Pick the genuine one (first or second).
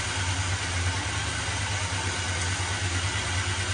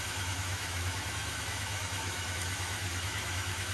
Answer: first